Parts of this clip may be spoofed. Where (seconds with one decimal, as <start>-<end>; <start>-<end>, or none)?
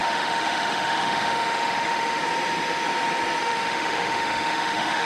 0.0-2.2; 3.4-5.1